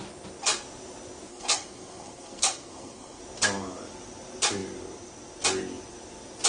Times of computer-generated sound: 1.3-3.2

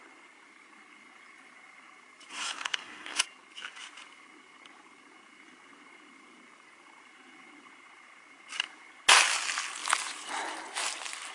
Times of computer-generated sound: 2.3-3.2

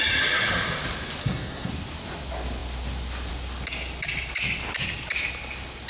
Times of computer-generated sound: 1.2-1.7

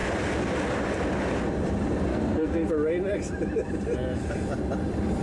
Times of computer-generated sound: 2.1-2.7

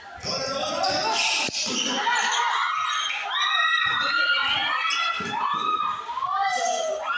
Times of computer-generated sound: none

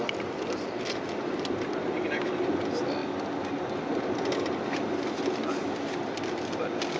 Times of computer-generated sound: none

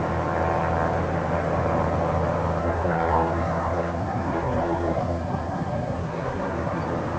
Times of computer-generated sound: 2.6-6.8